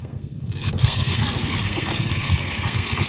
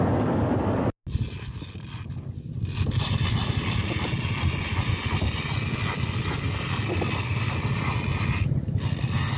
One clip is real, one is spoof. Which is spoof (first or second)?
first